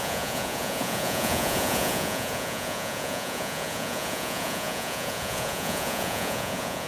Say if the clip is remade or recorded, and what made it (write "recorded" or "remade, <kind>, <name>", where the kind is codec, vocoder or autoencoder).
remade, vocoder, Vocos